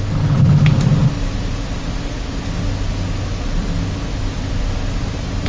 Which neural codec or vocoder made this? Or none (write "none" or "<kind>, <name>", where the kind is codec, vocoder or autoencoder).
none